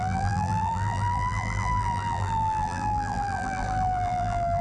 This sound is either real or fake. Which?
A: fake